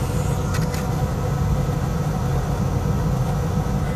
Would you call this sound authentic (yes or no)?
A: yes